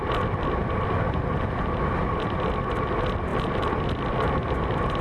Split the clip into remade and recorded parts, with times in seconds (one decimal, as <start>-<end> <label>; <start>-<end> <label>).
0.0-5.0 recorded